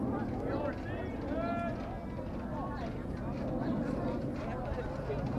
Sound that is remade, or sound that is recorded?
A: recorded